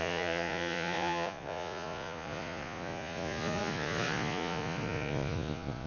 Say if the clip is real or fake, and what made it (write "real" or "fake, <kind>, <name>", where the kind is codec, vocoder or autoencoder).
fake, vocoder, Vocos